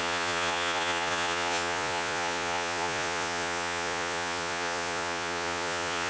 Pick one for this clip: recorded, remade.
remade